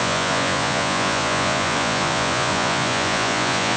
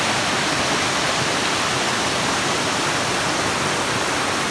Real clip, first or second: second